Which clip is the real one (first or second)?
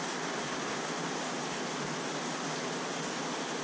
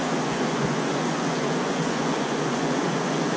first